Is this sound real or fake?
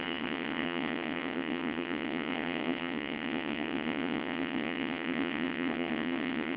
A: fake